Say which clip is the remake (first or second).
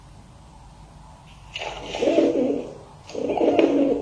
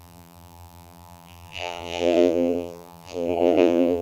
second